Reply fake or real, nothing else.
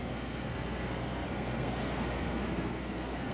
fake